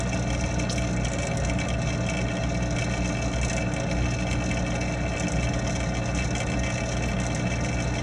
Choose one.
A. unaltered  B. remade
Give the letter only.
A